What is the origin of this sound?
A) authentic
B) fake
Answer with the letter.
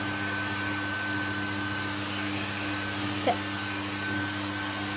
A